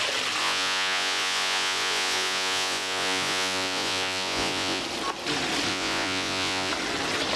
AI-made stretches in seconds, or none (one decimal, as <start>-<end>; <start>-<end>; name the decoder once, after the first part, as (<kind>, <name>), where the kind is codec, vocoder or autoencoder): 0.4-4.8 (vocoder, Vocos); 5.7-6.7

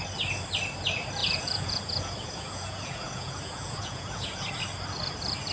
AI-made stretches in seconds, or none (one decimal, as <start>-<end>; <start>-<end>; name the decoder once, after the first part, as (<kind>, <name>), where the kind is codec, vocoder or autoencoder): 1.2-4.5 (vocoder, Vocos)

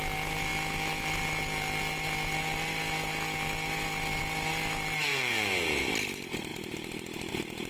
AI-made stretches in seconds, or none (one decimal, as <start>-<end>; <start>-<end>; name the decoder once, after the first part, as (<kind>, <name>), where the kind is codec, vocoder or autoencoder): 5.1-5.9 (vocoder, Vocos)

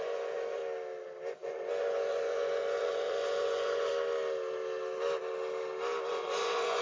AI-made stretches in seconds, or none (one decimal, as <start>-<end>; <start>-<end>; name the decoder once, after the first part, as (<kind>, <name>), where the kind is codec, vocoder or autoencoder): 0.0-0.6 (vocoder, Vocos); 1.3-3.9; 6.1-6.8

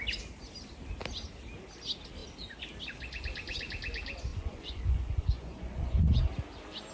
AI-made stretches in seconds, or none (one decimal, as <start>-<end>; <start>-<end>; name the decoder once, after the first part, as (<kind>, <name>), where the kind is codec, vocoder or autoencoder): 4.3-6.2 (vocoder, Vocos)